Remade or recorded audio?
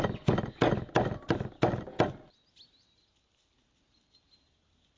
recorded